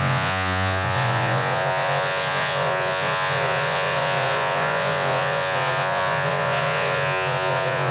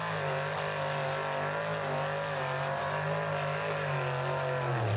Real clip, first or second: second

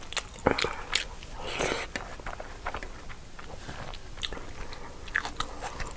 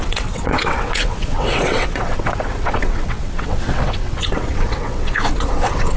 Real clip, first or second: first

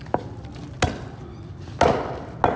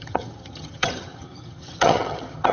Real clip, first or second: first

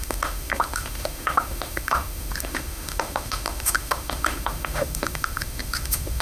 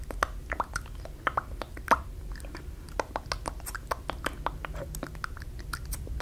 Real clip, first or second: second